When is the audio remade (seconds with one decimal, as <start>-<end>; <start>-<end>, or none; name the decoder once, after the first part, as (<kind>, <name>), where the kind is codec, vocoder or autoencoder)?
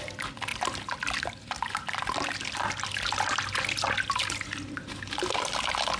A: none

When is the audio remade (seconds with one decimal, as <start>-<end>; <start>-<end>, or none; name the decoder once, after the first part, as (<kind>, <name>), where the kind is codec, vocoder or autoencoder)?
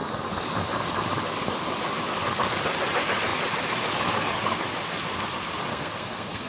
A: 5.7-6.5 (codec, SNAC)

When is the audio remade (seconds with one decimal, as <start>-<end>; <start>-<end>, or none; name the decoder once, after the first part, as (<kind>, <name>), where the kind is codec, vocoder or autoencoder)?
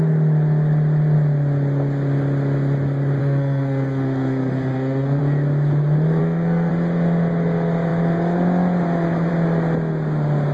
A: 3.2-5.2 (codec, SNAC); 6.2-6.7